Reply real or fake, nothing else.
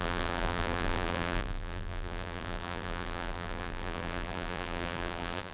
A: fake